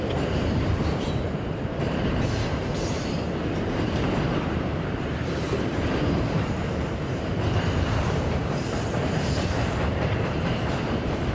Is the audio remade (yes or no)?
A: yes